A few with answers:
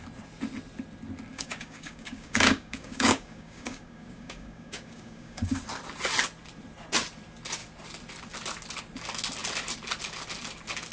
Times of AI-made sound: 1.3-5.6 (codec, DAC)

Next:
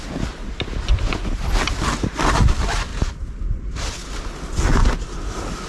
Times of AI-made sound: none